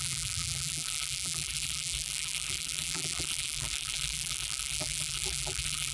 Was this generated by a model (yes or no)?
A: yes